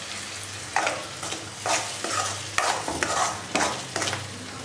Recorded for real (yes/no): yes